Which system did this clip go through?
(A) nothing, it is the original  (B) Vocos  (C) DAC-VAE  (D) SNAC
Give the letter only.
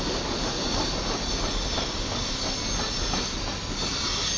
A